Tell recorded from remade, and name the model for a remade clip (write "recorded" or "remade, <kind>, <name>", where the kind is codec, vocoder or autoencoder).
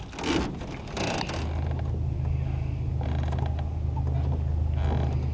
recorded